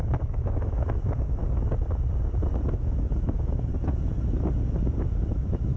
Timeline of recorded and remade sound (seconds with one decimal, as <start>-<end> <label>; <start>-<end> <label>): 0.0-1.4 remade; 1.4-2.7 recorded; 2.7-3.7 remade; 3.7-5.1 recorded; 5.1-5.8 remade